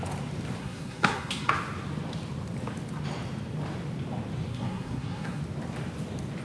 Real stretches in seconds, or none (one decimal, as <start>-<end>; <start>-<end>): 0.0-0.6; 1.5-4.5; 5.4-6.4